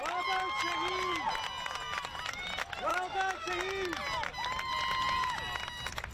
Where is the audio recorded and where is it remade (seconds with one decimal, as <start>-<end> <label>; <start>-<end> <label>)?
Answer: 0.0-2.9 recorded; 2.9-3.5 remade; 3.5-6.1 recorded